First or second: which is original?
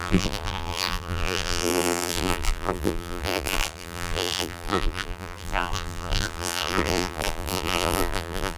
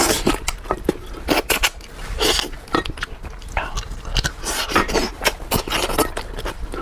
second